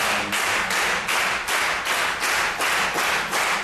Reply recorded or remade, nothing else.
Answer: recorded